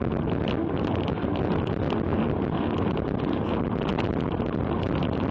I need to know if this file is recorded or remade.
recorded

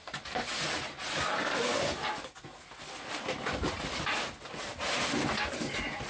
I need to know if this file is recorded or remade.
recorded